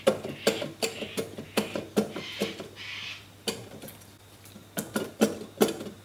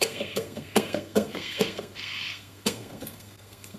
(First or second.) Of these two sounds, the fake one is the second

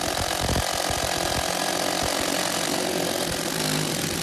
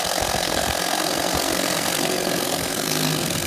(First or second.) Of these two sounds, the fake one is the second